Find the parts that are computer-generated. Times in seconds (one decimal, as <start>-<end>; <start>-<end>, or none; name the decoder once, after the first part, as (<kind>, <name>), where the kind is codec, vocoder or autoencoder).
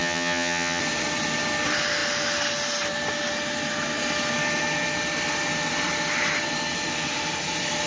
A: 0.0-0.8 (vocoder, HiFi-GAN)